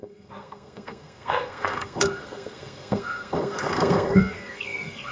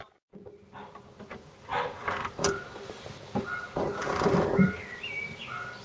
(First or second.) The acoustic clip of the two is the second